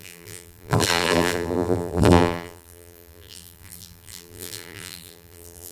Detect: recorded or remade remade